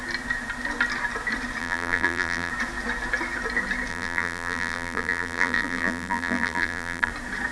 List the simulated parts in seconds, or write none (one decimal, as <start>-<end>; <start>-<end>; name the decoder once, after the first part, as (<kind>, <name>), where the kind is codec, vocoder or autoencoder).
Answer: 1.6-2.5 (vocoder, BigVGAN v2); 3.9-7.1